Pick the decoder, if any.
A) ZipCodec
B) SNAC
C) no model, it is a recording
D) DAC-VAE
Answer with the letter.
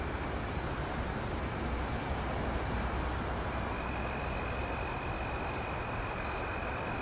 C